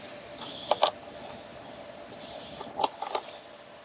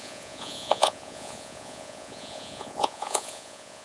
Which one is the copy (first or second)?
second